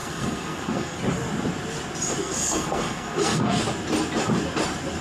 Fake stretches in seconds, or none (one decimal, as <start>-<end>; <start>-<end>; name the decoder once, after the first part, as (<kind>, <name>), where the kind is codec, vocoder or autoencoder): 0.0-1.0 (codec, SNAC); 2.2-3.6